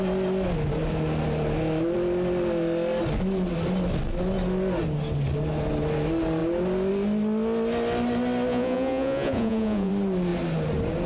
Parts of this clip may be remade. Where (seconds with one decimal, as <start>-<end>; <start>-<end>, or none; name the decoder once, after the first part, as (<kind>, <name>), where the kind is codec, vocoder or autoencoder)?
8.5-9.9 (vocoder, Vocos)